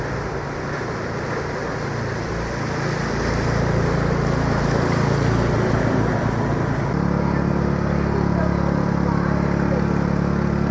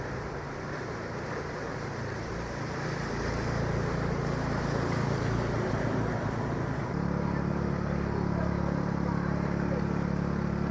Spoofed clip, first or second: second